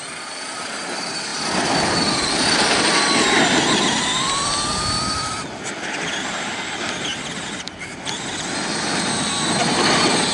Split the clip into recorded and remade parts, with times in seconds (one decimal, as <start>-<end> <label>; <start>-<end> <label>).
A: 0.0-10.3 recorded